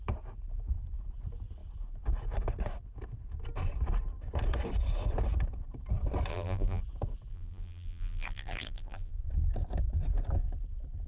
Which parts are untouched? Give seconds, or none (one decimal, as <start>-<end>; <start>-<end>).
0.0-6.3; 6.8-7.3; 9.1-11.1